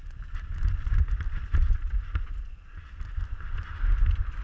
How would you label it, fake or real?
real